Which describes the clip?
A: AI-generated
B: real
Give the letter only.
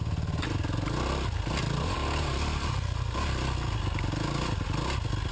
B